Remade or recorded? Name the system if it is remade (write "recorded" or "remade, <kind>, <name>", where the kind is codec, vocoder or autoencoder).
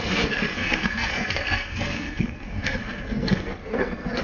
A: remade, codec, SNAC